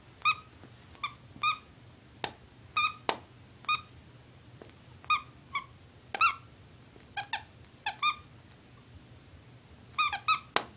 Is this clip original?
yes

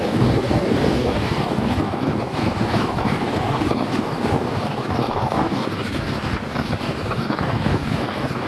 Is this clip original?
no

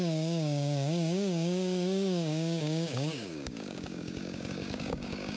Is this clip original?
no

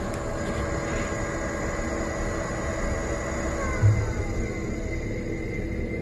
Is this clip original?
yes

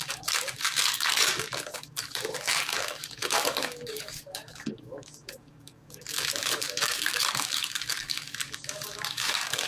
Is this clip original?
no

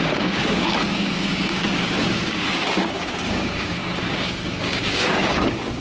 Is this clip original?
no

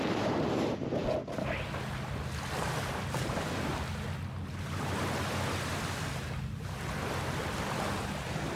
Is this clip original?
yes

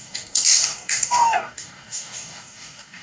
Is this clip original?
no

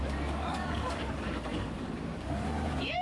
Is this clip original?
no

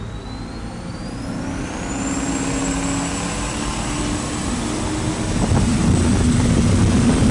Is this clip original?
yes